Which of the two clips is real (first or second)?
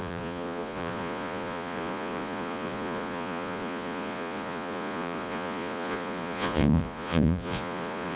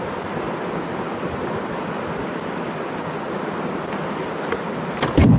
second